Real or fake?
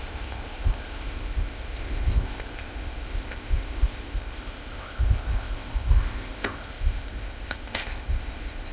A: fake